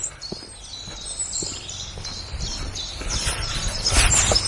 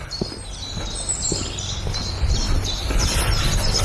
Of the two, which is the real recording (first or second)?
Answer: second